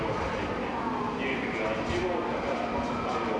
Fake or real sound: real